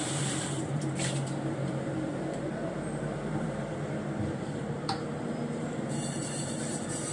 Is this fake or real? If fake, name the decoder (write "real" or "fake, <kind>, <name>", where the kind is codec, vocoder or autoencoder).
fake, vocoder, BigVGAN v2